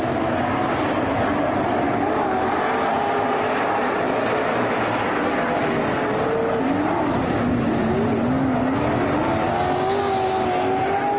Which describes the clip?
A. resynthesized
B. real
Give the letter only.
B